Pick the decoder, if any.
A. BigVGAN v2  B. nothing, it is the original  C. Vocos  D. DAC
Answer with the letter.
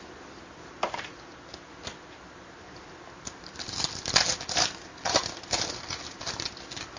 B